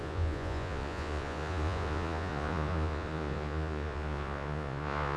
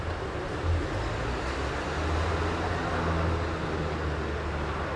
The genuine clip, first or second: second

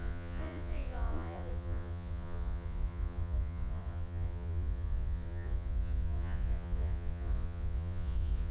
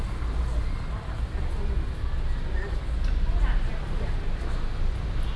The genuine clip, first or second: second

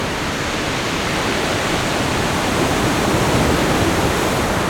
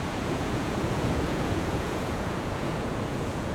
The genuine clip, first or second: first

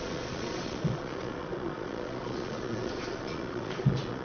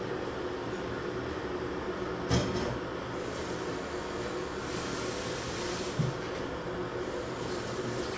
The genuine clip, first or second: second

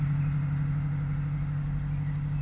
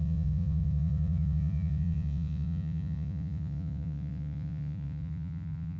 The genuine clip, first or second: first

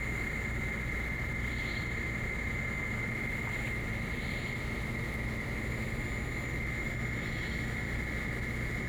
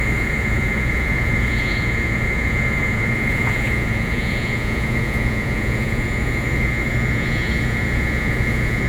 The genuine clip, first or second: first